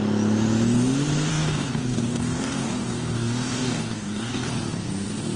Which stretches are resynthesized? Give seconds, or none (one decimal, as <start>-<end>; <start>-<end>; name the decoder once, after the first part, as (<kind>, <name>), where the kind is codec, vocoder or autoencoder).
1.3-4.5 (codec, DAC)